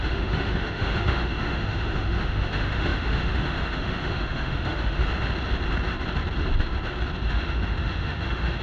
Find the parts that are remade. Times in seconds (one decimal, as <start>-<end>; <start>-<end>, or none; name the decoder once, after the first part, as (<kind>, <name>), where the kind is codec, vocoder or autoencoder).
0.0-5.0 (autoencoder, DAC-VAE); 7.3-8.6

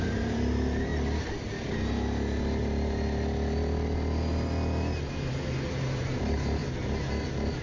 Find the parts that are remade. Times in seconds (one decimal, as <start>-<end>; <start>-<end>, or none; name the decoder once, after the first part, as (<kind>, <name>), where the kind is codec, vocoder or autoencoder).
0.0-0.9 (vocoder, BigVGAN v2); 5.2-6.6

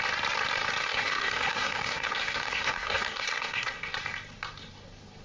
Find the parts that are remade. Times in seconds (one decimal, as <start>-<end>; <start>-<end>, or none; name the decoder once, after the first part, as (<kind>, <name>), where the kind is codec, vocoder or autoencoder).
0.8-3.9 (codec, SNAC)

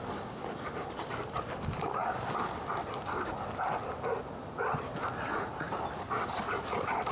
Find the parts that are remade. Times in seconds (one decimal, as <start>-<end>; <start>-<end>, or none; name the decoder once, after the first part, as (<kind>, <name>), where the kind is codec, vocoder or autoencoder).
5.3-5.8 (vocoder, Vocos)

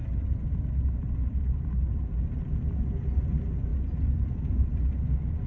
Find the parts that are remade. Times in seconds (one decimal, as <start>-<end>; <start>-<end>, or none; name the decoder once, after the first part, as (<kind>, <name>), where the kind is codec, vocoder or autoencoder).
3.7-4.7 (vocoder, BigVGAN v2)